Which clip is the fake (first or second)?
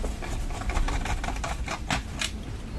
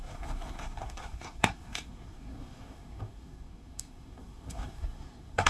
second